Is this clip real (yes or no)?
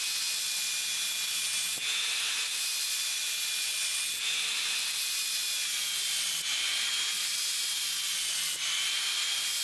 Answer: no